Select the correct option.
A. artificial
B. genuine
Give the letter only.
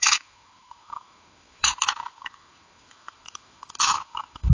A